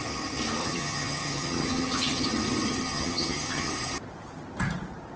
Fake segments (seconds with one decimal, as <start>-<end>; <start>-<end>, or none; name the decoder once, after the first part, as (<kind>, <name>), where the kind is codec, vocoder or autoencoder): 0.6-2.3 (vocoder, HiFi-GAN); 2.8-3.7